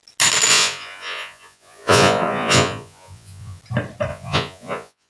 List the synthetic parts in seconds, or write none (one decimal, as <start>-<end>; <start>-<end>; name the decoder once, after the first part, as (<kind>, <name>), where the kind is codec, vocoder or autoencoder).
0.5-3.6 (vocoder, Vocos); 4.1-5.1